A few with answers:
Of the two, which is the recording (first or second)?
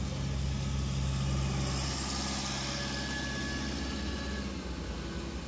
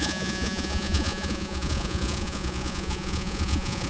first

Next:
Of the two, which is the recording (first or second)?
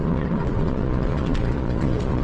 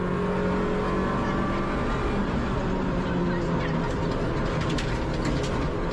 second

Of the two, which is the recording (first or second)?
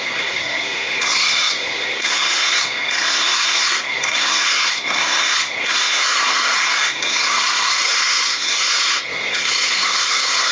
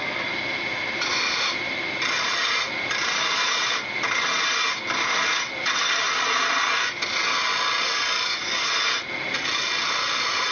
second